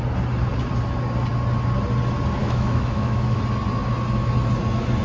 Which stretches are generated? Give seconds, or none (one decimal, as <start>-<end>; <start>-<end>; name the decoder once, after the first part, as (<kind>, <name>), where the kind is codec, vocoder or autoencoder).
2.4-3.4 (autoencoder, DAC-VAE)